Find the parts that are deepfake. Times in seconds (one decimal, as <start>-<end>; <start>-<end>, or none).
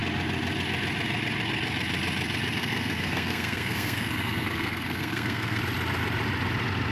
2.6-5.6